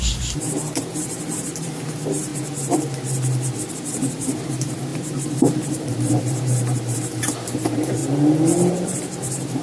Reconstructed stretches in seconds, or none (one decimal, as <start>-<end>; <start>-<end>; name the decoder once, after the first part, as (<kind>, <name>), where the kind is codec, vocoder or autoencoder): 0.0-2.3 (vocoder, BigVGAN v2); 3.7-8.0; 8.7-9.6